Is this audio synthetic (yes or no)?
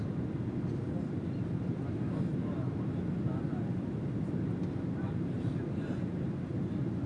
no